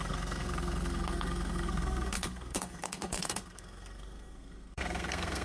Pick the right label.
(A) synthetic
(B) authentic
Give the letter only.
A